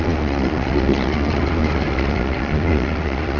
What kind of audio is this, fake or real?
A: fake